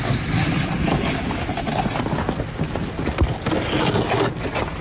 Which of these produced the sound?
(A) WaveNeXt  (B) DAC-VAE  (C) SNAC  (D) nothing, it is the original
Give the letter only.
D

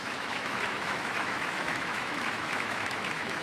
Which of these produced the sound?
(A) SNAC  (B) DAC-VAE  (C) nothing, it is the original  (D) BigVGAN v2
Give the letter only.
B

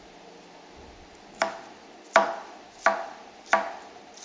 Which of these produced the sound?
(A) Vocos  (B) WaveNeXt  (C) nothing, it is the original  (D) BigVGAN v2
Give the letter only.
C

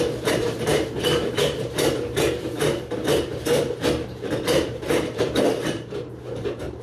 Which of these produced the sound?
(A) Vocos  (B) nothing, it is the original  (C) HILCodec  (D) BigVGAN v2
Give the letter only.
D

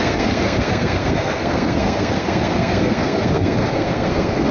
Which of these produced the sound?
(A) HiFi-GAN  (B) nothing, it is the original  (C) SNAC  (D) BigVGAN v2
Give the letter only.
C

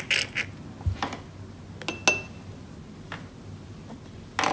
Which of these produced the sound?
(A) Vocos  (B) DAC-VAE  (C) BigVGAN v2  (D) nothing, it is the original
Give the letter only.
D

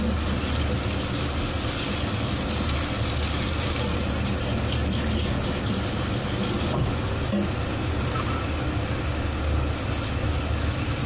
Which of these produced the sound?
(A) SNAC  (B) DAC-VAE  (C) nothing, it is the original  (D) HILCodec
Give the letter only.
C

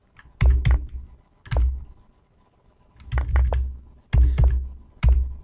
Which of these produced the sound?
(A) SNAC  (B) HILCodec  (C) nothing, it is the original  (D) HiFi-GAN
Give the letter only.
C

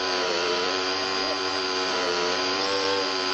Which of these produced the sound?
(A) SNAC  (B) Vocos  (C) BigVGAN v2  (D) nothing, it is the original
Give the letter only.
C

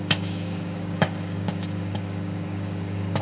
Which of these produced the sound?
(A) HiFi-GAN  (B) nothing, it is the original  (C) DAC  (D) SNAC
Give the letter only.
C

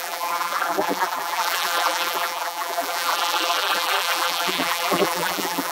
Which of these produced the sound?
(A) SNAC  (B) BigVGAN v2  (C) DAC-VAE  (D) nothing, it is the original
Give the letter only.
B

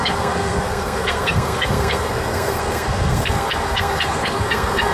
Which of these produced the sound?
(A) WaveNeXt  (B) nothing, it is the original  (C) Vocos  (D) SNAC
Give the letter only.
D